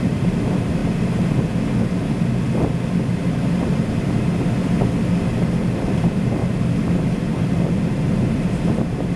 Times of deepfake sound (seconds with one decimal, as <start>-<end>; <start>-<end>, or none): 0.0-0.8; 6.0-6.4; 7.4-9.2